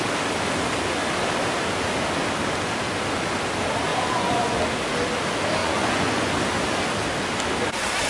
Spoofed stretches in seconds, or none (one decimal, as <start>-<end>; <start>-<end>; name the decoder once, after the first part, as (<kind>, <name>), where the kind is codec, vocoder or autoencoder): 3.9-4.6 (vocoder, Vocos); 5.6-6.3